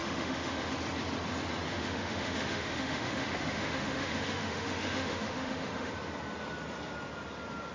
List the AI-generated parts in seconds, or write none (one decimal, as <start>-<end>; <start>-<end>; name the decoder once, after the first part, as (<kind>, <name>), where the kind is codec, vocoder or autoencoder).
0.0-0.7 (autoencoder, DAC-VAE); 1.7-5.9